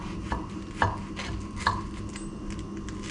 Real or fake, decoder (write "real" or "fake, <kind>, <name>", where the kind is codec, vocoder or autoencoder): real